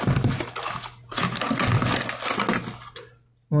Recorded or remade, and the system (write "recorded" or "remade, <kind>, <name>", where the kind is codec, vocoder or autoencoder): recorded